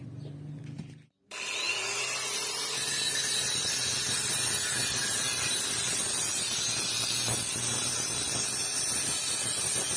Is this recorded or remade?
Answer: recorded